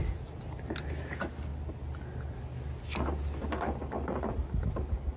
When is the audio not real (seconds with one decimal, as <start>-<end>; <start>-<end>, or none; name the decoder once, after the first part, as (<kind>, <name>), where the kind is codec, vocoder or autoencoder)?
none